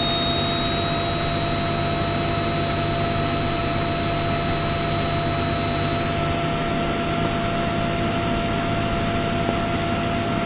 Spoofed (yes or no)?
no